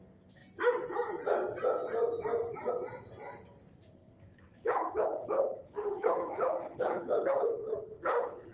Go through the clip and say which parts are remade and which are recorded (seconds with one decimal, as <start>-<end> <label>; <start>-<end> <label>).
0.0-4.0 recorded; 4.0-8.5 remade